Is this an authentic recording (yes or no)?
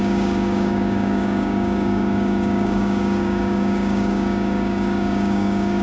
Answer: no